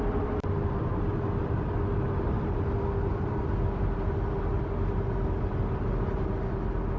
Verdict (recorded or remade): recorded